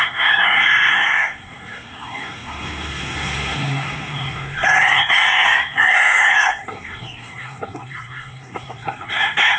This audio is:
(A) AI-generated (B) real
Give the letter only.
A